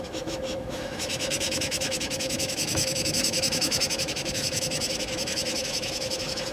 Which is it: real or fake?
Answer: fake